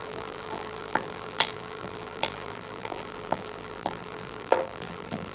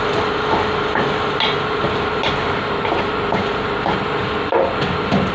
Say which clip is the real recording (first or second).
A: second